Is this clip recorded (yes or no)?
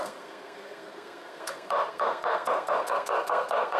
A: no